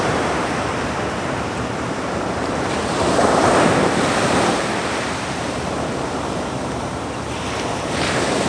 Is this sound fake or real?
fake